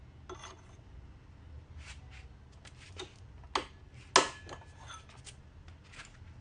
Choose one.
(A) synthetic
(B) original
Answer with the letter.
B